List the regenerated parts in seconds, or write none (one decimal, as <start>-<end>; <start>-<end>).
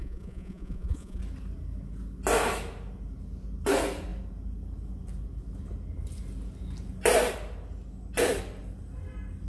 0.0-1.2